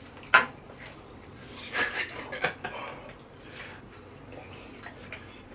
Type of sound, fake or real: real